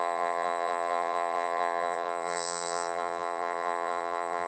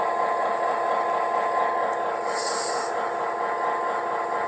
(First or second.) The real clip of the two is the second